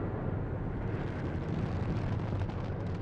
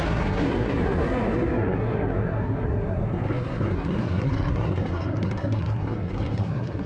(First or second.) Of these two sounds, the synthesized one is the second